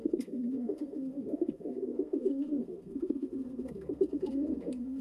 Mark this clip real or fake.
fake